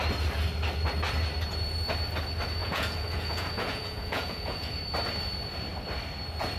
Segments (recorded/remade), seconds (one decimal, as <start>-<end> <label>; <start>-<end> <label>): 0.0-2.6 recorded; 2.6-4.7 remade; 4.7-6.6 recorded